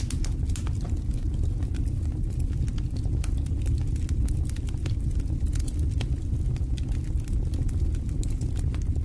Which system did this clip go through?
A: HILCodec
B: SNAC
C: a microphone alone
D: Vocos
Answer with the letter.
C